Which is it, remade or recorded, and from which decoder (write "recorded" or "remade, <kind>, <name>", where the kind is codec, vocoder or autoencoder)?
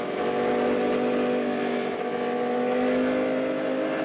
recorded